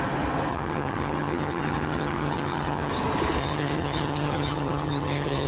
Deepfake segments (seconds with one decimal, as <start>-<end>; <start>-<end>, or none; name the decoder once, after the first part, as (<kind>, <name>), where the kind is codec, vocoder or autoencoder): 0.5-2.9 (vocoder, HiFi-GAN); 3.4-5.5